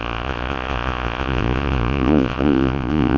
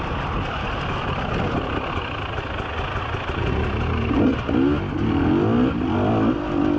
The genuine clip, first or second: second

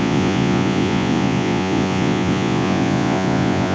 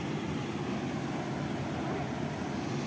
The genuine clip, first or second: second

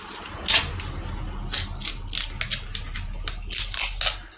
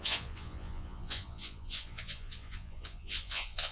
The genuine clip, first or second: first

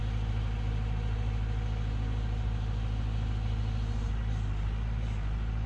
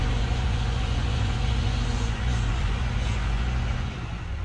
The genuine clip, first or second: first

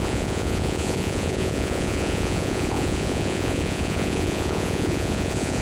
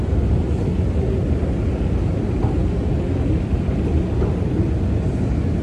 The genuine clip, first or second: second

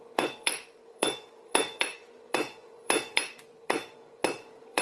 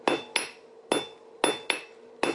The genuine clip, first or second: second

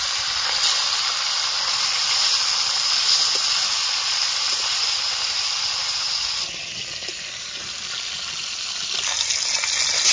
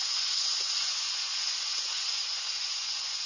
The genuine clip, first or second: first